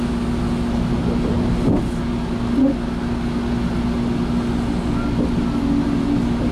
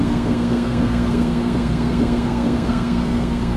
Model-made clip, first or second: second